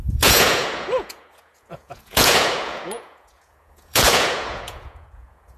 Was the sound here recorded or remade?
remade